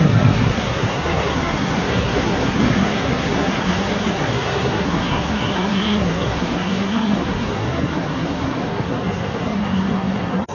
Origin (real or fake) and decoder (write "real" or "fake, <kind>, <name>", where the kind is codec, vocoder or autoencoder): fake, codec, SNAC